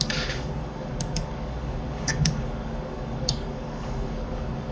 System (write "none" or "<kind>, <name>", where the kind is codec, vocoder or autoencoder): codec, DAC